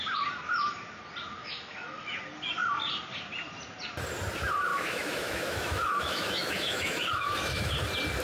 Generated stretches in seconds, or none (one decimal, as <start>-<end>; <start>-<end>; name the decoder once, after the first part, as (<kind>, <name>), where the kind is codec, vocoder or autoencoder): 1.4-2.2 (autoencoder, DAC-VAE); 4.7-7.7

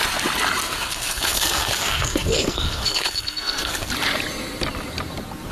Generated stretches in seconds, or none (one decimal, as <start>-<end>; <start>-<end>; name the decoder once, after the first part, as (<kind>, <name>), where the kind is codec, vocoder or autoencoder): 0.6-3.9 (codec, SNAC)

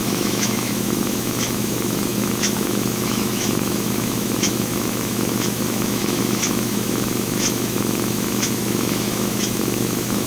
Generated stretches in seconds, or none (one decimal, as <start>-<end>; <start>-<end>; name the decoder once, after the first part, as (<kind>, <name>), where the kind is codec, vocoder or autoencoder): 0.0-10.3 (autoencoder, DAC-VAE)

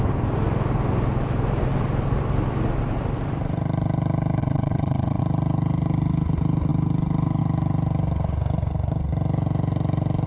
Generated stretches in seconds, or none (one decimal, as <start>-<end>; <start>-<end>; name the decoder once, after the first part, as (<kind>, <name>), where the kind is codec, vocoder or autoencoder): 4.4-5.2 (vocoder, Vocos)

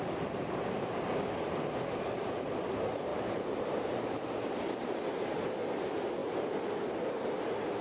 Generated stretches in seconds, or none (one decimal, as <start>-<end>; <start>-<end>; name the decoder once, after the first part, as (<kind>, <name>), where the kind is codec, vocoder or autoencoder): none